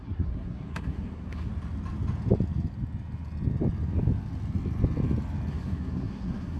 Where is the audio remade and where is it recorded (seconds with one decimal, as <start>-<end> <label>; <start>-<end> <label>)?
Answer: 0.0-1.5 remade; 1.5-5.5 recorded; 5.5-6.6 remade